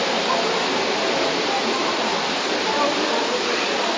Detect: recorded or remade recorded